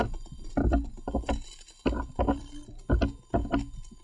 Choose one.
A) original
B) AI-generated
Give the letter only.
A